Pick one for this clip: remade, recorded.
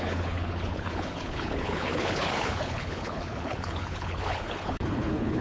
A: remade